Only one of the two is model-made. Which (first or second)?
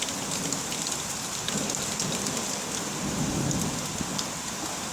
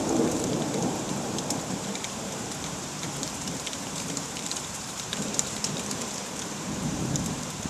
second